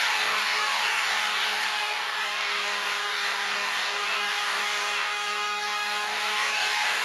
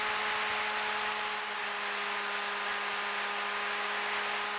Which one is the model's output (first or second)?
first